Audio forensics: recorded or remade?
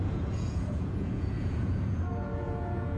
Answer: remade